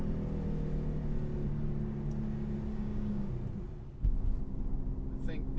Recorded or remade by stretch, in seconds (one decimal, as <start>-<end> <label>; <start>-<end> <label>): 0.0-2.7 recorded; 2.7-3.3 remade; 3.3-5.6 recorded